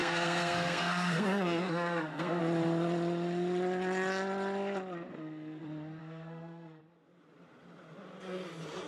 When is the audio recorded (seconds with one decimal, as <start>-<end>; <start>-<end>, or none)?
2.4-5.1; 5.6-6.0; 6.8-8.9